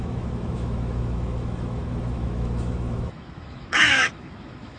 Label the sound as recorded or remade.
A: remade